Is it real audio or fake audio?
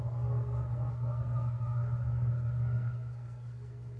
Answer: fake